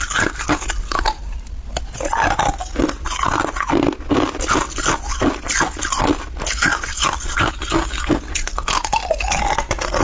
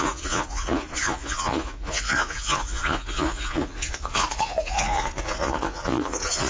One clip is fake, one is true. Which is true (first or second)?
first